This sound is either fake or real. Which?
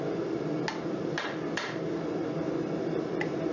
real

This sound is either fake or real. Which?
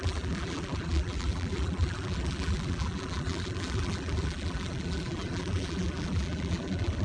fake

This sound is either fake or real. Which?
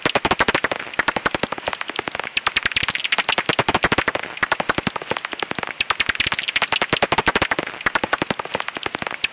real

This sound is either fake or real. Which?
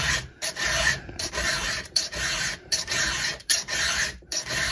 fake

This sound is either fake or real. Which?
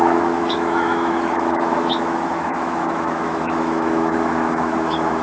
fake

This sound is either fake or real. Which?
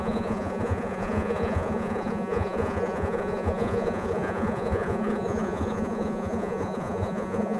fake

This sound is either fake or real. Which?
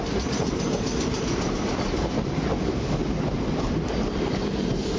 real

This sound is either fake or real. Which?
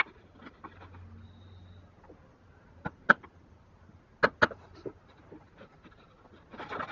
real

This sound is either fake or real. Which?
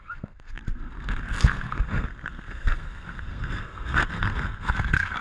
fake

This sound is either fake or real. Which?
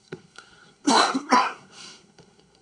fake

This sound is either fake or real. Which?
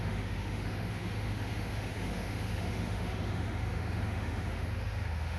fake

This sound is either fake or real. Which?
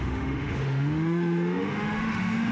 fake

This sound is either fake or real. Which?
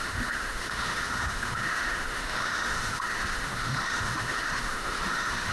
fake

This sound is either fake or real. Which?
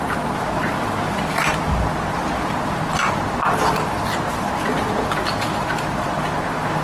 fake